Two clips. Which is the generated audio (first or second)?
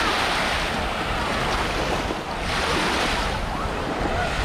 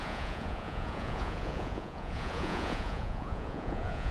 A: second